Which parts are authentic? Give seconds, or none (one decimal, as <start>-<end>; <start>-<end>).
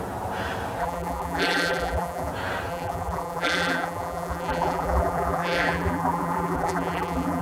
0.0-0.8; 2.3-2.7